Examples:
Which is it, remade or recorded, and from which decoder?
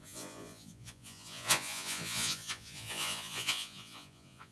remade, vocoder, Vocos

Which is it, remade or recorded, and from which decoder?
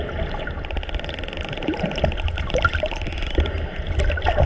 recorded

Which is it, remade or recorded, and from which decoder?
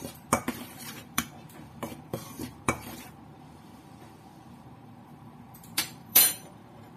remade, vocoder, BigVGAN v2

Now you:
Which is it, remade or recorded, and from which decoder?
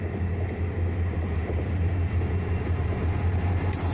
recorded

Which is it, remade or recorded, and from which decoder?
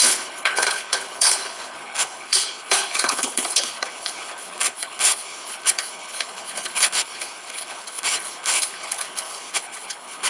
remade, codec, HILCodec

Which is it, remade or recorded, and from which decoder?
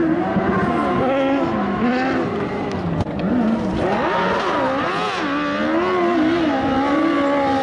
recorded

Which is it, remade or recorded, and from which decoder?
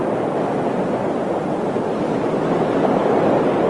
recorded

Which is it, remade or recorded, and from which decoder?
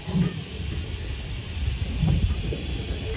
recorded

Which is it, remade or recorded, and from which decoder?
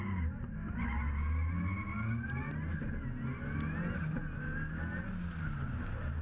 recorded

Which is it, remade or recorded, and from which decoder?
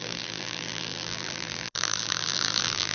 remade, vocoder, BigVGAN v2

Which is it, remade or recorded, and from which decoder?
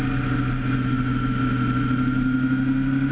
recorded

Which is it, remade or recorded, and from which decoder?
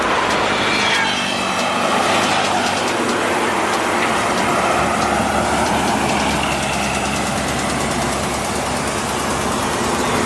recorded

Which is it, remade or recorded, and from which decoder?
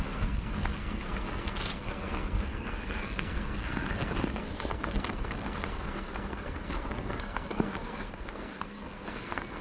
remade, codec, SNAC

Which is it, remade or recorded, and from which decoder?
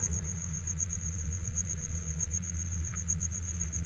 remade, vocoder, Vocos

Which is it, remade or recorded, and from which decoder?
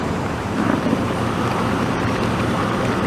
remade, vocoder, BigVGAN v2